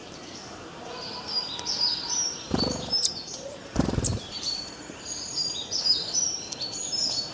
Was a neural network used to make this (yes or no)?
yes